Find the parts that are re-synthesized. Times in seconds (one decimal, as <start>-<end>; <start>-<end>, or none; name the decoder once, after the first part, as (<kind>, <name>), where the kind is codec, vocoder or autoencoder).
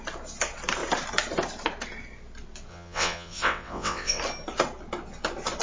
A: 2.7-4.2 (vocoder, WaveNeXt)